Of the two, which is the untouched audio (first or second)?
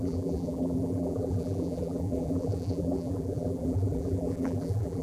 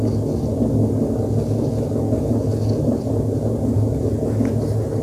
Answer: second